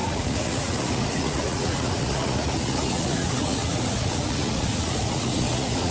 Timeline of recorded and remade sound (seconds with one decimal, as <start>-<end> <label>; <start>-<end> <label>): 0.0-5.9 remade

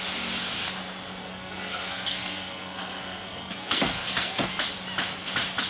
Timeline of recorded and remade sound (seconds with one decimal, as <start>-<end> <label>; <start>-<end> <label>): 0.0-1.2 recorded; 1.2-4.5 remade; 4.5-5.7 recorded

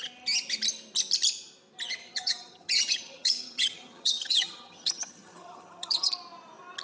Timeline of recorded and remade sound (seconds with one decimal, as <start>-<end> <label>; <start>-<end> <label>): 0.0-2.0 recorded; 2.0-6.1 remade; 6.1-6.8 recorded

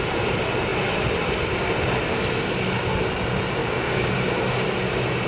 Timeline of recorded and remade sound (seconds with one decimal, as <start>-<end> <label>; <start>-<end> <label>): 0.0-3.6 recorded; 3.6-4.1 remade; 4.1-5.3 recorded

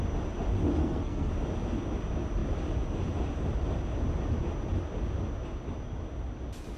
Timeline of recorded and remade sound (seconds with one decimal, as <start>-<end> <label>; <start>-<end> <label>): 0.0-0.8 recorded; 0.8-1.3 remade; 1.3-6.8 recorded

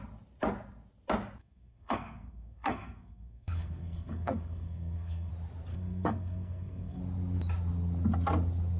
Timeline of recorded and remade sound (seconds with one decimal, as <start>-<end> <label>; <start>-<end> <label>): 0.0-1.4 recorded; 1.4-5.3 remade; 5.3-5.7 recorded; 5.7-7.0 remade; 7.0-8.8 recorded